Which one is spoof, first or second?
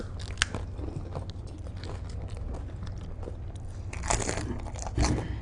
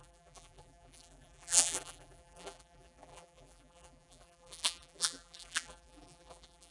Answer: second